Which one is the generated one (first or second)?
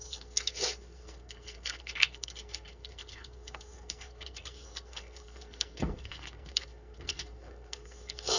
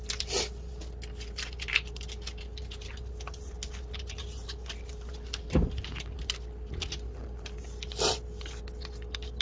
first